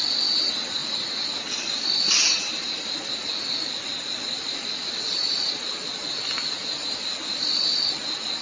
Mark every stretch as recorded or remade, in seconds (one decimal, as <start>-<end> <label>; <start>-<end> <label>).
0.0-8.4 recorded